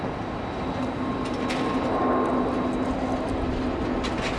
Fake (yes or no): no